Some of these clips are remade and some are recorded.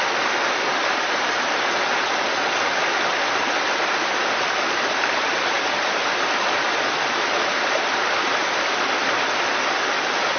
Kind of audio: recorded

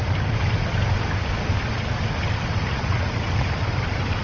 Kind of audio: recorded